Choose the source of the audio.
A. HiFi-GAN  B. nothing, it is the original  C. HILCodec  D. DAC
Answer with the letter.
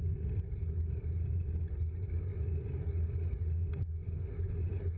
B